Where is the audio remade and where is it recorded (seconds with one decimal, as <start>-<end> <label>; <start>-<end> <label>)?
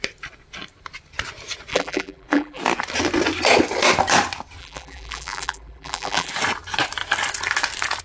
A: 0.0-1.7 recorded; 1.7-2.6 remade; 2.6-4.6 recorded; 4.6-6.3 remade; 6.3-8.0 recorded